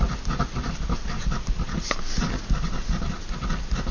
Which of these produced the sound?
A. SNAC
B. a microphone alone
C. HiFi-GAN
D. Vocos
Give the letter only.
B